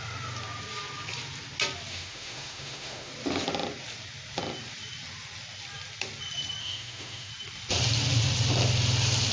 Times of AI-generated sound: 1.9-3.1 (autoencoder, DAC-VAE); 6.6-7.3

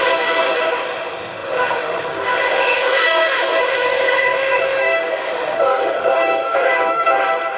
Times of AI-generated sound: 0.0-7.6 (autoencoder, DAC-VAE)

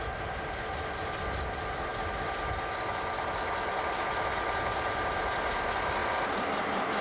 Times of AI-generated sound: none